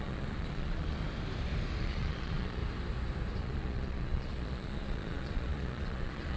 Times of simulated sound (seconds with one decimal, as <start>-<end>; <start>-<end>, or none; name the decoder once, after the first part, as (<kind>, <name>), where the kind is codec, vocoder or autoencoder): 0.0-1.0 (vocoder, Vocos); 1.8-2.6; 3.4-6.4